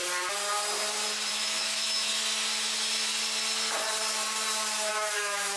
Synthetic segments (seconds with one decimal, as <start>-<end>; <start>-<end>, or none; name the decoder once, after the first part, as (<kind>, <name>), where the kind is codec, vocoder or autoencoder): 1.3-2.1 (autoencoder, DAC-VAE); 4.9-5.6